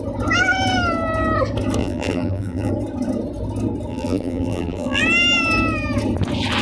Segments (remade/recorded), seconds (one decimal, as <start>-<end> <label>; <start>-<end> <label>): 0.0-1.8 recorded; 1.8-2.7 remade; 2.7-3.9 recorded; 3.9-5.0 remade; 5.0-6.6 recorded